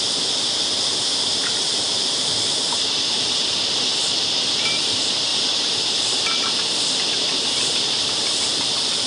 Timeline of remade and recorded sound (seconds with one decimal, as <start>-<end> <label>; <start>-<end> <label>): 0.0-9.1 recorded